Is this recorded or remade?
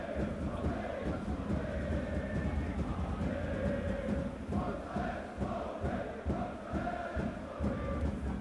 recorded